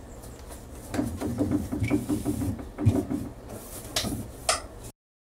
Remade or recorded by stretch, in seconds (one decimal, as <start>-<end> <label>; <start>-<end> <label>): 0.0-1.3 recorded; 1.3-3.0 remade; 3.0-5.3 recorded